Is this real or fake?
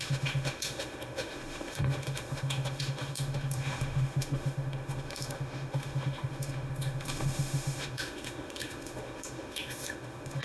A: fake